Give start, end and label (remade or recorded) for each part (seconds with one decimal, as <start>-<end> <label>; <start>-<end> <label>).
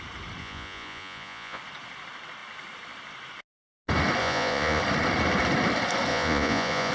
0.0-0.4 recorded; 0.4-1.6 remade; 1.6-4.2 recorded; 4.2-4.8 remade; 4.8-6.1 recorded; 6.1-6.9 remade